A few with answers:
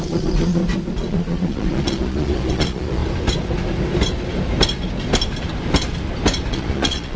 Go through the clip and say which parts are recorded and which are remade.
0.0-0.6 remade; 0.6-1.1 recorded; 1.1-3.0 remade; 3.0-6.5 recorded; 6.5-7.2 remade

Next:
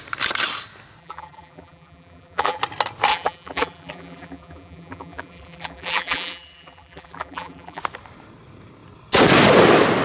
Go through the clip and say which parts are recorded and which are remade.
0.0-1.0 recorded; 1.0-2.6 remade; 2.6-3.1 recorded; 3.1-7.8 remade; 7.8-10.0 recorded

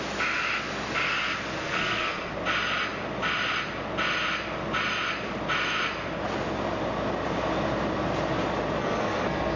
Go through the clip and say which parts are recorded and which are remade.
0.0-1.6 recorded; 1.6-2.3 remade; 2.3-8.8 recorded; 8.8-9.6 remade